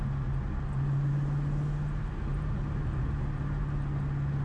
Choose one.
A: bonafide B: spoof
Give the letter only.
A